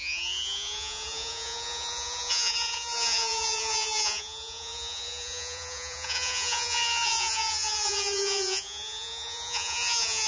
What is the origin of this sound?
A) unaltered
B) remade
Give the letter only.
B